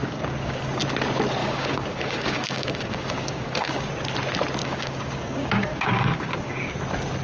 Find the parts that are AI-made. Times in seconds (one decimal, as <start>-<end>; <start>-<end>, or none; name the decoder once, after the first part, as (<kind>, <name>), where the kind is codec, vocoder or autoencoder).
0.0-0.8 (codec, DAC); 1.4-3.9; 4.6-6.7